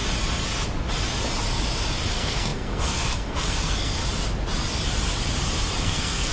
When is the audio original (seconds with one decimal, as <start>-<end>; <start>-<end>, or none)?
0.0-2.1; 4.0-5.8